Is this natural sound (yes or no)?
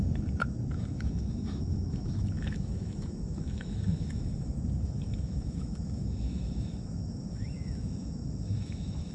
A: no